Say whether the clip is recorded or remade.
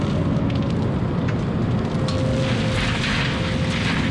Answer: recorded